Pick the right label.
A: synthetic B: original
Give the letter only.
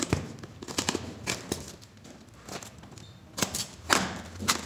A